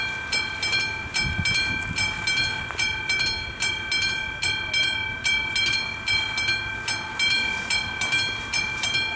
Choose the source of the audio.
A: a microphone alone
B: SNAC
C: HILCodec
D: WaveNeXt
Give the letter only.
A